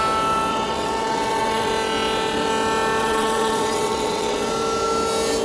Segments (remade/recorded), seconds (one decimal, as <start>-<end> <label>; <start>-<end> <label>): 0.0-0.5 recorded; 0.5-1.7 remade; 1.7-3.0 recorded; 3.0-4.5 remade; 4.5-5.4 recorded